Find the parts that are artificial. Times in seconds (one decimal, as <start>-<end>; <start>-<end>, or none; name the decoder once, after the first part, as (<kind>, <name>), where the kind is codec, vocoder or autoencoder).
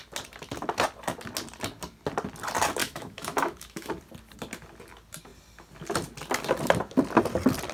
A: 2.8-3.9 (autoencoder, DAC-VAE)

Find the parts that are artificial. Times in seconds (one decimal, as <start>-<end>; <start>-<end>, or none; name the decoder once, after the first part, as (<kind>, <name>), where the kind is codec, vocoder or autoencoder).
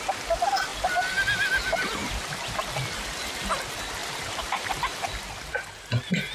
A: 0.7-1.5 (vocoder, BigVGAN v2); 2.0-3.5; 4.0-5.5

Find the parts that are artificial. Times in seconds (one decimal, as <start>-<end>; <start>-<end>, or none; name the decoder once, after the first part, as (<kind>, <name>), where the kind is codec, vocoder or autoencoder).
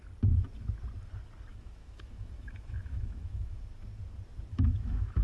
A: 1.5-3.6 (autoencoder, DAC-VAE); 4.5-5.2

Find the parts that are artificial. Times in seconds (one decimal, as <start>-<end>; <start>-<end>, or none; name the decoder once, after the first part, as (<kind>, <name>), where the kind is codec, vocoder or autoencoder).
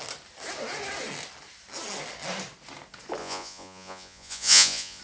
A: 3.2-5.0 (vocoder, Vocos)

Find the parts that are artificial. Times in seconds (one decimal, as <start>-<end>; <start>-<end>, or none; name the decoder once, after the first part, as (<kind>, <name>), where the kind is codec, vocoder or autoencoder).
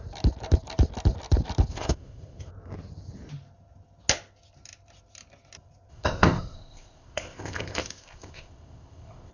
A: 1.7-2.5 (codec, ZipCodec); 5.9-9.3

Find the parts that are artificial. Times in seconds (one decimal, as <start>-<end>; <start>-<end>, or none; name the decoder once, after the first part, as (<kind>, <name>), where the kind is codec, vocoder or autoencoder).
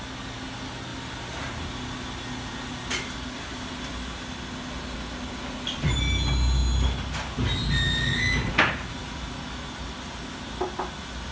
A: none